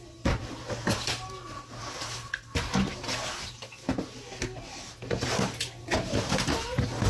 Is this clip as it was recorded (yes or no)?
yes